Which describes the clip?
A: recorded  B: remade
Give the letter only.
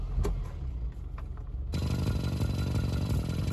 A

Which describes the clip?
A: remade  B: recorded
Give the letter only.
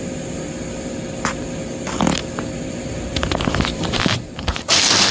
B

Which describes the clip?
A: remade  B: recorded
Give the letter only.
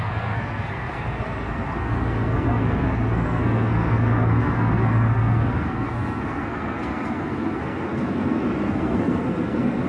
A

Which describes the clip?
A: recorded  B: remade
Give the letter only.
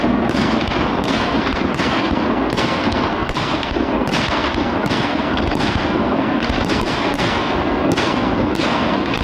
B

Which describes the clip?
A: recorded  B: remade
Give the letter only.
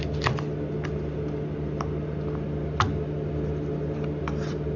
A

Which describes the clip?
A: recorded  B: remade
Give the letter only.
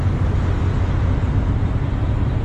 A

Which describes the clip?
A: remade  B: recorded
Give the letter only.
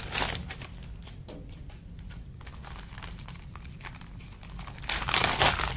B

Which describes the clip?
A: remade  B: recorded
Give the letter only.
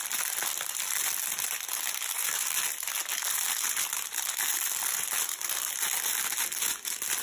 B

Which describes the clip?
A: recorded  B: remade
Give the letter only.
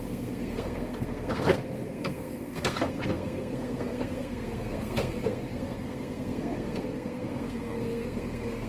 B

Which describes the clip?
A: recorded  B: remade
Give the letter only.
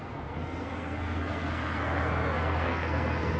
B